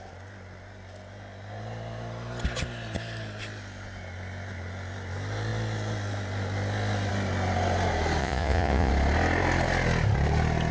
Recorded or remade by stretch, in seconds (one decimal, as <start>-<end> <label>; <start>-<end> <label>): 0.0-8.2 recorded; 8.2-8.9 remade; 8.9-10.7 recorded